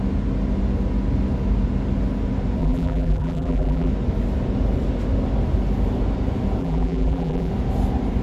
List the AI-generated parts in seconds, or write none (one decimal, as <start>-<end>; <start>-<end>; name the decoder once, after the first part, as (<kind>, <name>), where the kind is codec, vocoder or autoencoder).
2.6-3.9 (vocoder, BigVGAN v2); 6.6-7.5